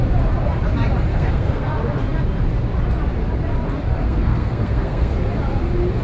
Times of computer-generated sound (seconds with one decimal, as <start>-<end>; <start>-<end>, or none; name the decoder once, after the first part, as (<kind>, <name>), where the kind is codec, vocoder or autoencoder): 1.1-1.7 (codec, SNAC); 4.0-5.1